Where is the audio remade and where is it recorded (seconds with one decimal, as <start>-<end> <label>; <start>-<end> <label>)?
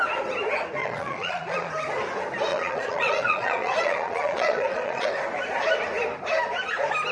0.0-0.8 recorded; 0.8-1.7 remade; 1.7-2.5 recorded; 2.5-5.1 remade; 5.1-7.1 recorded